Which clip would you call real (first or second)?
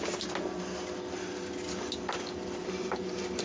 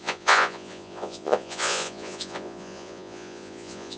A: first